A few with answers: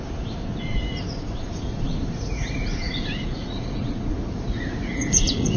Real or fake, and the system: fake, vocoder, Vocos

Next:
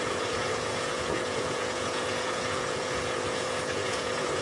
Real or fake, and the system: fake, vocoder, Vocos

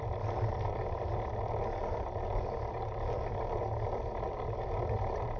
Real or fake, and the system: real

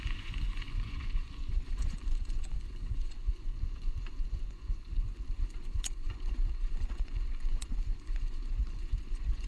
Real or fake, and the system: fake, vocoder, Vocos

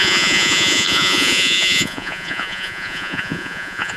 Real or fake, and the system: fake, vocoder, Vocos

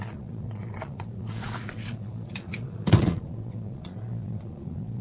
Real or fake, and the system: fake, vocoder, Vocos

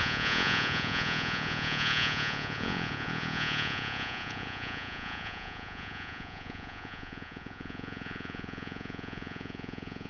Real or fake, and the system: fake, vocoder, Vocos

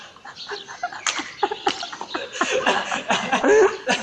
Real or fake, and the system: real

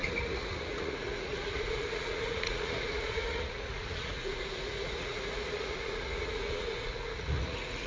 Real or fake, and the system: fake, vocoder, Vocos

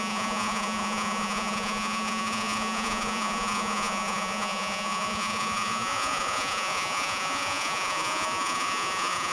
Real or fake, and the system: fake, vocoder, Vocos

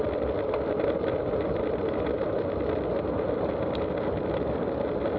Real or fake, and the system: real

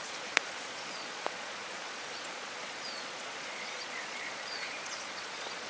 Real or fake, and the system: fake, vocoder, Vocos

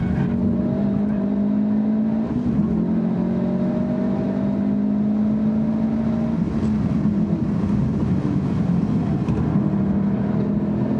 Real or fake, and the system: real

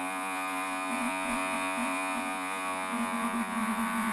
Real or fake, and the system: fake, vocoder, Vocos